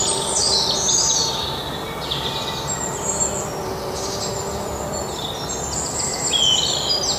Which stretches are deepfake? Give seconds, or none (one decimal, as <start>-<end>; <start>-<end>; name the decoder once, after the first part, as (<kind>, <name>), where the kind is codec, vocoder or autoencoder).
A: none